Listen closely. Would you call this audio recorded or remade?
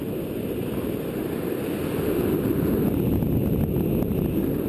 recorded